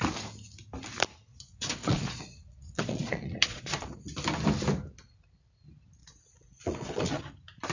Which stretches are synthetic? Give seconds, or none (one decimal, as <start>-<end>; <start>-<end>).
1.3-3.9; 6.0-7.2